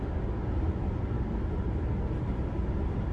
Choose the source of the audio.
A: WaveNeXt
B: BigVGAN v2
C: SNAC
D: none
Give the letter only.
D